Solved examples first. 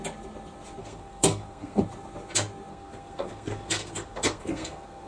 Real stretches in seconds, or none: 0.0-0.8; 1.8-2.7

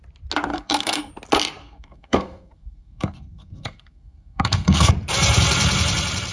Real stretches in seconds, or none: 0.0-0.5; 1.1-1.6; 4.9-6.3

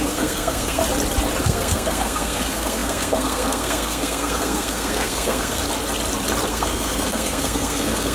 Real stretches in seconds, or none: 0.8-1.4; 5.6-6.5

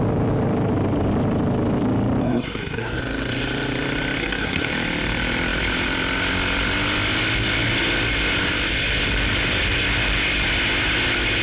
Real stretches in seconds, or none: 0.0-2.2; 3.0-4.2; 4.7-11.4

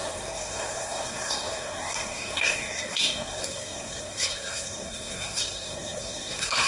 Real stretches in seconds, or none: none

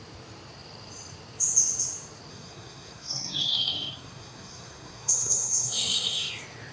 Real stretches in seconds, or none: 0.0-2.3; 6.3-6.7

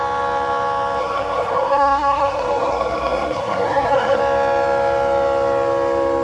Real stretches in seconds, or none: 0.0-1.0; 4.2-6.2

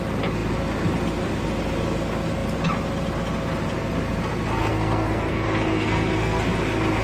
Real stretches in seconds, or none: 0.0-4.6; 6.4-7.0